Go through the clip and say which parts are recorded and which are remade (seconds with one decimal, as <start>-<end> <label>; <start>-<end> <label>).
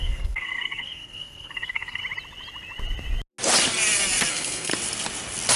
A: 0.0-2.0 remade; 2.0-4.3 recorded; 4.3-4.7 remade; 4.7-5.6 recorded